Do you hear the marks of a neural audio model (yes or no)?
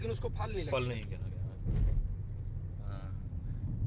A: no